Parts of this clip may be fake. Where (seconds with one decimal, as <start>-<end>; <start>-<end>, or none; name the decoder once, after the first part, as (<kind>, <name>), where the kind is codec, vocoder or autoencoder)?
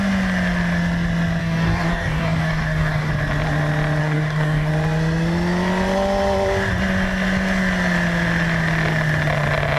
1.4-3.1 (codec, DAC); 4.0-4.7